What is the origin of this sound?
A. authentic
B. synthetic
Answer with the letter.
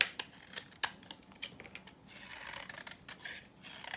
A